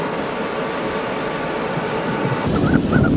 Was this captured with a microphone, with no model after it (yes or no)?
yes